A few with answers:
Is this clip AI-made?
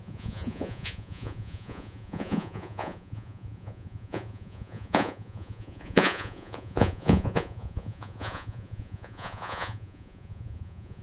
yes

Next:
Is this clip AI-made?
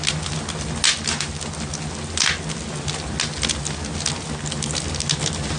no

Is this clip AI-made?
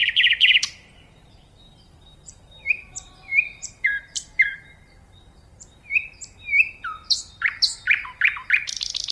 yes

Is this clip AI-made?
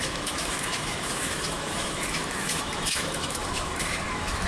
yes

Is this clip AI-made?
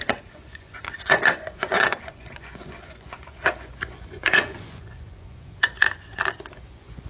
yes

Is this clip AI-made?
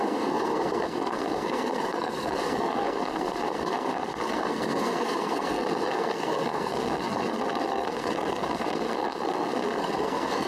yes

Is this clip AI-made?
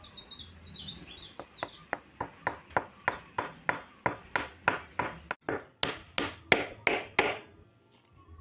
no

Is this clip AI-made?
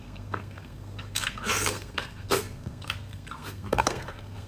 yes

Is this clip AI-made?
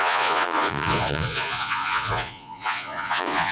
yes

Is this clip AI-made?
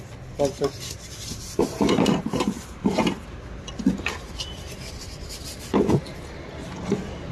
no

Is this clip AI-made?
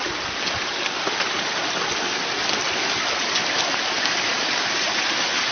no